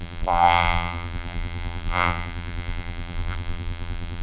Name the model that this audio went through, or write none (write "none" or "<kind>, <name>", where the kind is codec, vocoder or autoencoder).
vocoder, BigVGAN v2